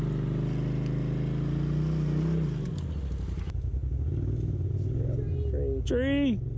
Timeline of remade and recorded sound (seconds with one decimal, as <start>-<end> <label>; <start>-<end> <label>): 0.0-6.6 recorded